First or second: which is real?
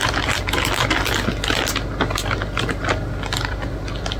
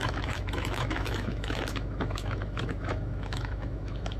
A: first